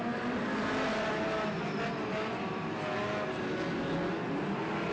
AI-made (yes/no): no